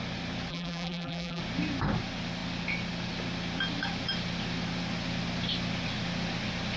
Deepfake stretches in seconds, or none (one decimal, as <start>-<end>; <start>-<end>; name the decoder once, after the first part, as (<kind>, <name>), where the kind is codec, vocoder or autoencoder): 0.5-1.4 (vocoder, BigVGAN v2)